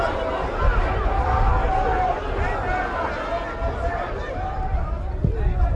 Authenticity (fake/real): real